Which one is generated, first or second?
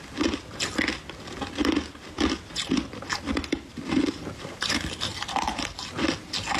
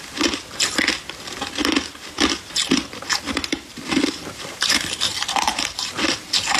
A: second